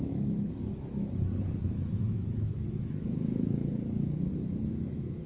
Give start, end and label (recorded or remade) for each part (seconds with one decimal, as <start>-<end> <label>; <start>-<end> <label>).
0.0-3.6 remade; 3.6-4.3 recorded; 4.3-5.3 remade